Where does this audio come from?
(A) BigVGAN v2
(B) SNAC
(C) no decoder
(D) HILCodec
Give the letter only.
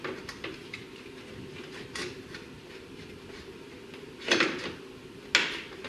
C